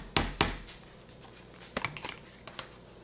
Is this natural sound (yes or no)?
yes